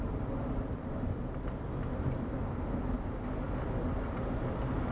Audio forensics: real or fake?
real